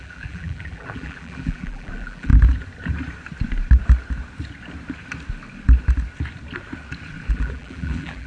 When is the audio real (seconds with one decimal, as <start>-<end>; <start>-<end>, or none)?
2.3-7.3